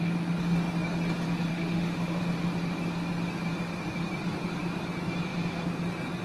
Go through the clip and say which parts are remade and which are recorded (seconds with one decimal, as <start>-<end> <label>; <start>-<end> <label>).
0.0-1.5 recorded; 1.5-2.2 remade; 2.2-6.2 recorded